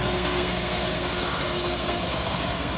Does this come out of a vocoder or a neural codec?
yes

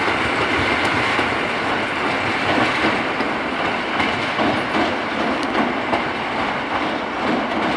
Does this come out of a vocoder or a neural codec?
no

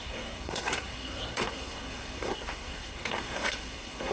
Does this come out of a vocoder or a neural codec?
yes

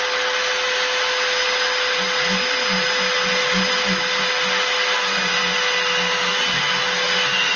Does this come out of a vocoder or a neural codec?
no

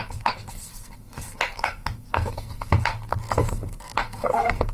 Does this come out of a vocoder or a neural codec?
yes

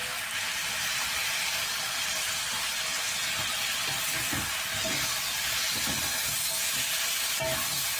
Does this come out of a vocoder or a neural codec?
no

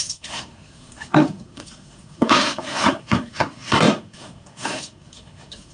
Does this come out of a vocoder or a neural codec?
yes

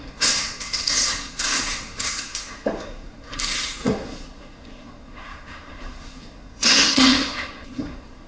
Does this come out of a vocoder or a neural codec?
yes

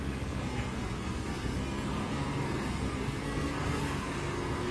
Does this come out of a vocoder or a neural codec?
yes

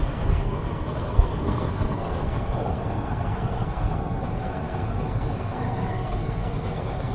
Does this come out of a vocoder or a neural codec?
yes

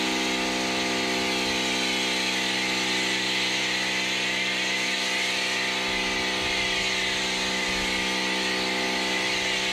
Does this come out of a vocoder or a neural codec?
no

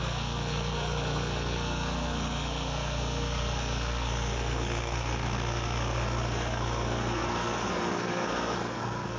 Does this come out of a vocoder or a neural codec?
yes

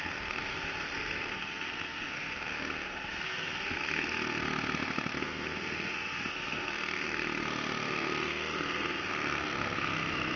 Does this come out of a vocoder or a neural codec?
yes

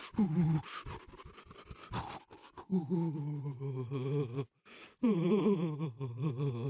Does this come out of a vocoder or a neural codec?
no